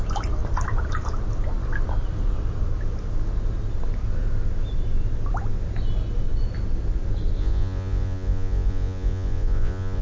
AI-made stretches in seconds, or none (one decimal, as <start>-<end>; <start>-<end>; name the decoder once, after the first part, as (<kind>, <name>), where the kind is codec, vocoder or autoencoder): 7.4-10.0 (vocoder, Vocos)